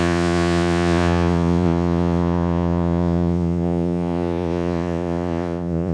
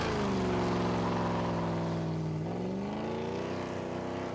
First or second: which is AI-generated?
first